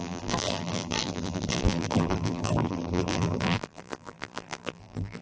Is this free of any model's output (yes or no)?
no